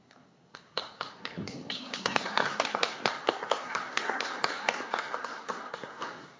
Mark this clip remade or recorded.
remade